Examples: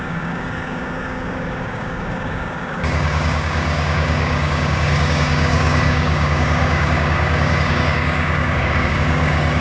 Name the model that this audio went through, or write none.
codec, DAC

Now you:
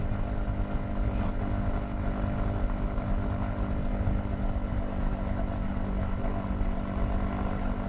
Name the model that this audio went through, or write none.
none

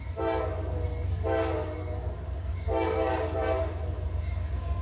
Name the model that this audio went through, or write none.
codec, DAC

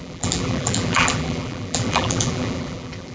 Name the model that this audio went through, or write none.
vocoder, BigVGAN v2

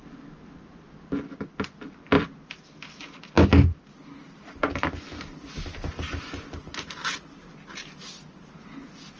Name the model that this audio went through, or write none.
none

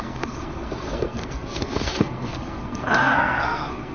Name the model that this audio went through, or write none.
codec, SNAC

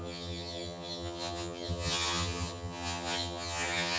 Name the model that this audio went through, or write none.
vocoder, HiFi-GAN